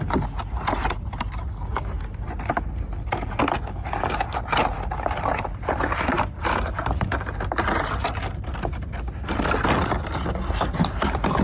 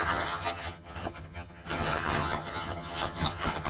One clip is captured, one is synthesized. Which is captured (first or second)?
first